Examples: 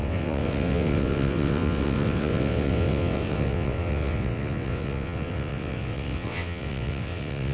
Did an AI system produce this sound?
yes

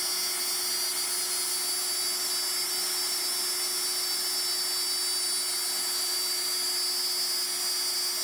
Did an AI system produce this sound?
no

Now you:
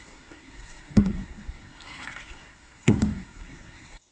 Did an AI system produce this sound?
yes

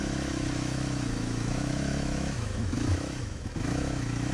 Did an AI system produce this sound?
yes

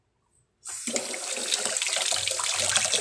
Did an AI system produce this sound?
no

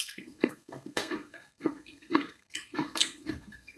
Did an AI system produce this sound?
yes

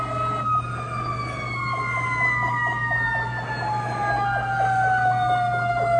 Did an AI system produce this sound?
no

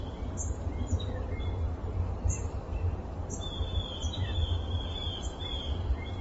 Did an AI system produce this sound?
yes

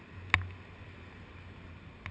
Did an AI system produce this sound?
no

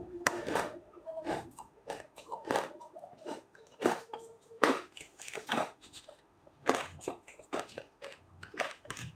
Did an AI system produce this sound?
yes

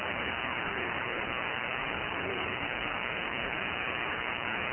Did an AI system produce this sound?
yes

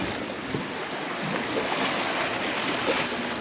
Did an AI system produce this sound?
no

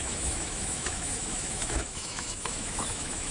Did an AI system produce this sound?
yes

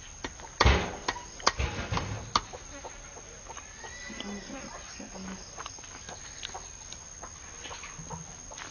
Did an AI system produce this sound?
no